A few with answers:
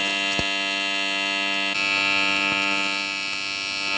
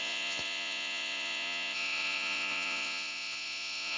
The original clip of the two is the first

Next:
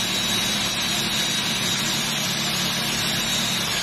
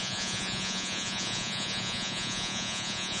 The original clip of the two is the first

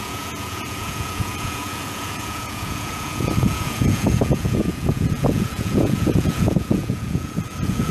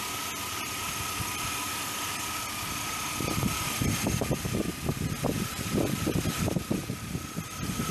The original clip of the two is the second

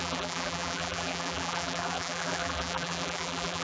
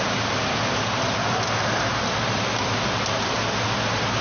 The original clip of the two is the second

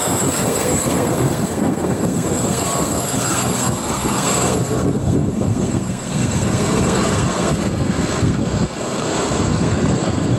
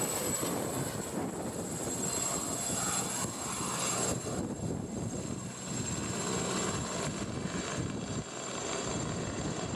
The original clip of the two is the second